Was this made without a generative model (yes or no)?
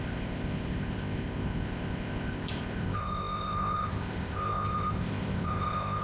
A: no